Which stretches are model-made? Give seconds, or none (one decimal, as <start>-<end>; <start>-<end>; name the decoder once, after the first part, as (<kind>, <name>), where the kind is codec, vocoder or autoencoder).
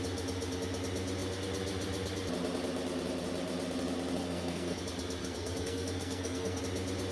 4.2-4.8 (codec, SNAC); 5.2-6.6